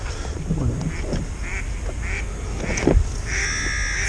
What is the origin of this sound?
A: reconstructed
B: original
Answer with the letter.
B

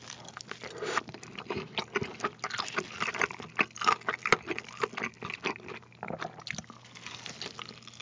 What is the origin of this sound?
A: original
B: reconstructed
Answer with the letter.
A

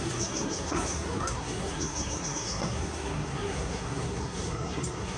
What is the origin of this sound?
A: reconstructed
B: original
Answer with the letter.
A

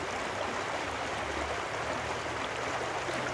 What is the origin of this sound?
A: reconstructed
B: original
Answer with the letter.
B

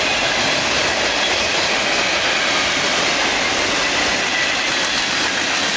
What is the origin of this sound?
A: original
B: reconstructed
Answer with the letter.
A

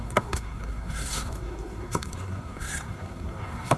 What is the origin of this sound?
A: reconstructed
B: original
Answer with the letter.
A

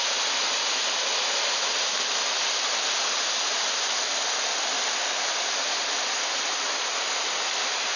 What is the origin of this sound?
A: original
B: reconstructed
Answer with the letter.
A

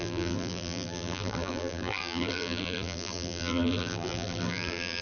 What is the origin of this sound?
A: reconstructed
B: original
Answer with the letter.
A